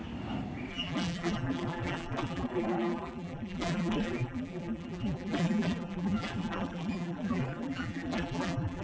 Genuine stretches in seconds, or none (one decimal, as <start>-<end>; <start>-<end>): 0.0-0.7